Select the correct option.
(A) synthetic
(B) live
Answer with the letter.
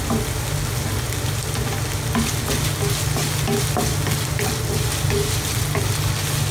B